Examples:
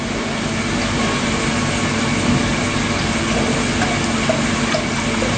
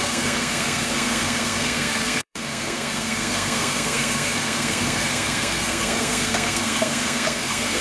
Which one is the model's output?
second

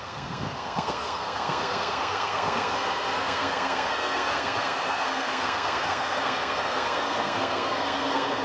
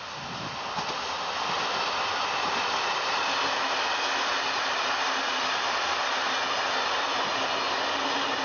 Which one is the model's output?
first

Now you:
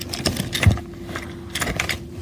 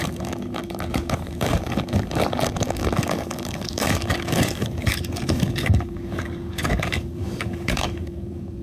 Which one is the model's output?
second